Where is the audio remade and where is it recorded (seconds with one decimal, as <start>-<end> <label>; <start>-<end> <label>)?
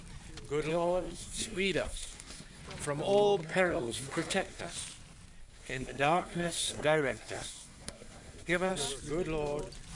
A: 0.0-0.7 recorded; 0.7-2.6 remade; 2.6-3.4 recorded; 3.4-4.6 remade; 4.6-5.4 recorded; 5.4-8.7 remade; 8.7-9.9 recorded